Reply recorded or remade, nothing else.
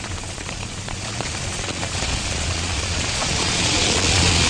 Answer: remade